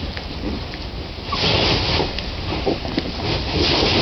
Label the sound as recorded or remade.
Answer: recorded